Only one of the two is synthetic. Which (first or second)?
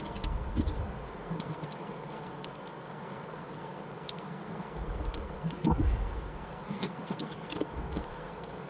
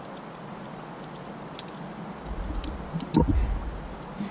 first